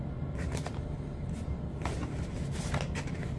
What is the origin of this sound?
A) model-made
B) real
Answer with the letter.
B